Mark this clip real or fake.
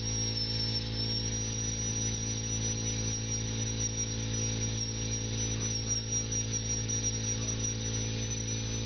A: real